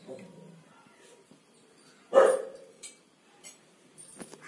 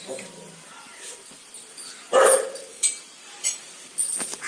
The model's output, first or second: first